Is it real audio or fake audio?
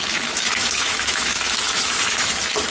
fake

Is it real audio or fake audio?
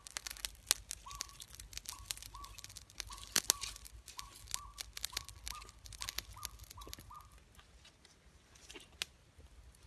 real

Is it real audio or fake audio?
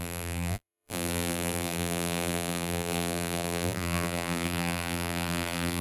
fake